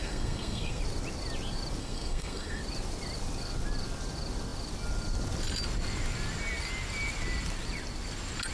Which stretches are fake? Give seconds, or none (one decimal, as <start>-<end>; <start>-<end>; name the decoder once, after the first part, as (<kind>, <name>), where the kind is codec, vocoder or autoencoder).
0.0-0.8 (codec, SNAC); 1.8-2.6